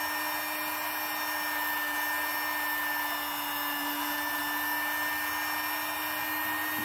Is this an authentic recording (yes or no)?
yes